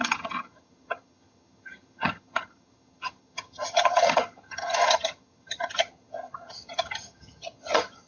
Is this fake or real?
fake